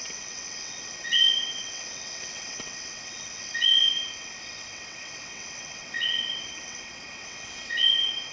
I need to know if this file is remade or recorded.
remade